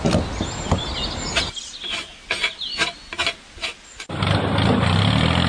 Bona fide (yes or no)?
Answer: yes